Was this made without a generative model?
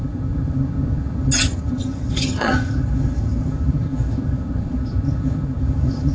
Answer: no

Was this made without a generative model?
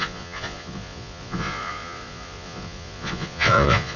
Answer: no